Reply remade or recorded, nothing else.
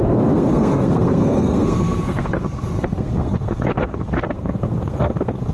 remade